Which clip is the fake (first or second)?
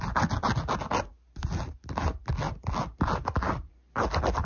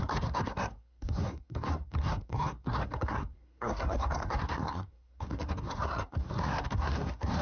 second